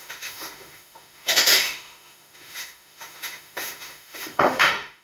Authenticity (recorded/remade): remade